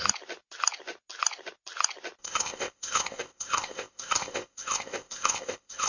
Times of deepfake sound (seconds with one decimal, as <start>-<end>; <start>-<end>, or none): 2.2-5.9

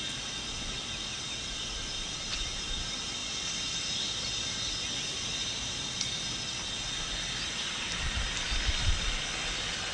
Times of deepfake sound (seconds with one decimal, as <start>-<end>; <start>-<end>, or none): none

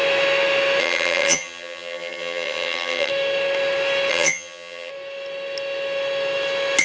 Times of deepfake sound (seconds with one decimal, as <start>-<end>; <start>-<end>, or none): 0.8-3.1; 4.1-4.9